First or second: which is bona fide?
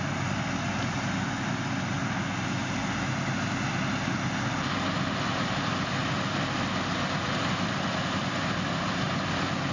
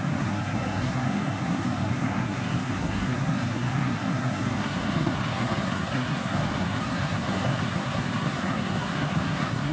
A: first